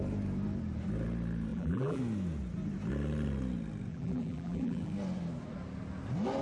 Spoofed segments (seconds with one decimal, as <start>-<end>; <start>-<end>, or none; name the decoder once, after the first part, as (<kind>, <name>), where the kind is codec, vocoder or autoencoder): 1.5-2.0 (vocoder, BigVGAN v2); 3.9-4.9